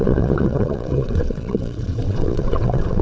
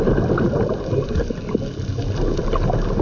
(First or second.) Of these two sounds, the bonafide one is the second